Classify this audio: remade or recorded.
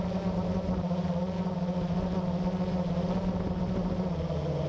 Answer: recorded